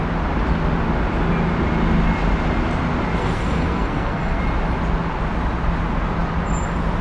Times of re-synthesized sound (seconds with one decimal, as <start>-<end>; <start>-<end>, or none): 3.2-4.4